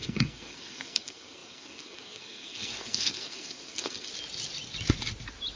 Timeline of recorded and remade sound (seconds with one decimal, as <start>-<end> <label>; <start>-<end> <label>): 0.0-4.1 remade; 4.1-5.6 recorded